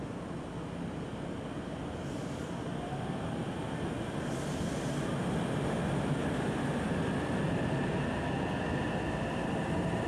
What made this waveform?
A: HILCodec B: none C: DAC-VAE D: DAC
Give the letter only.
B